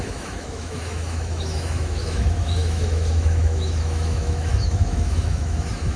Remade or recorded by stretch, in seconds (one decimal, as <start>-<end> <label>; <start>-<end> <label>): 0.0-6.0 remade